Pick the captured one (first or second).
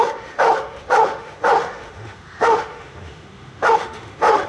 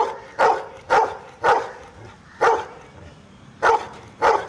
second